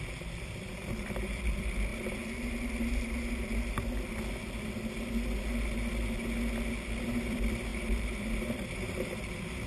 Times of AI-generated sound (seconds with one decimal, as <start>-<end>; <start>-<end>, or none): 0.0-1.9; 6.7-9.7